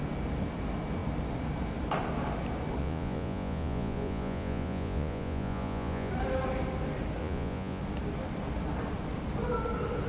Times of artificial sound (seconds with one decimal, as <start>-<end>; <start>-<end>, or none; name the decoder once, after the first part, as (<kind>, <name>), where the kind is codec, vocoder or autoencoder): 2.8-6.1 (vocoder, Vocos); 7.2-7.8